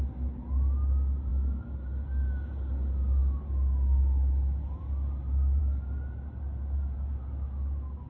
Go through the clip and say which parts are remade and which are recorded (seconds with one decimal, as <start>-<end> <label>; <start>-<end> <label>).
0.0-8.1 recorded